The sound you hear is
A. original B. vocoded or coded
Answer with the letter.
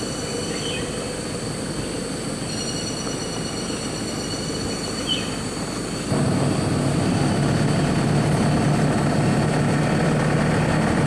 A